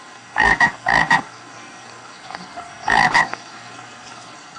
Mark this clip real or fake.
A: fake